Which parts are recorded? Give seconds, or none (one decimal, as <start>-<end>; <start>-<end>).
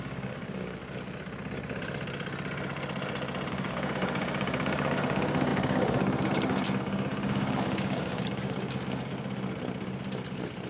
0.8-3.5; 9.1-10.7